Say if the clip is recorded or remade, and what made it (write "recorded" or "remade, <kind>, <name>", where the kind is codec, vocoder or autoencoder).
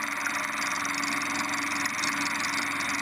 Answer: recorded